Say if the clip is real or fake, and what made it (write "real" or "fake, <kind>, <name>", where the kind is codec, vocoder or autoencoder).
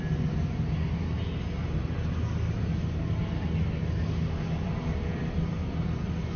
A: real